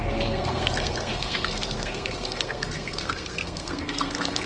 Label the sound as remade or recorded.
remade